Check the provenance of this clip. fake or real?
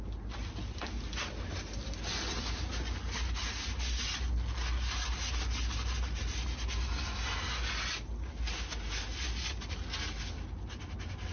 real